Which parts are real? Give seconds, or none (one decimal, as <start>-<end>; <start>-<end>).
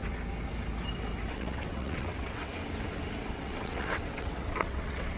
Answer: 0.0-1.3; 2.6-3.3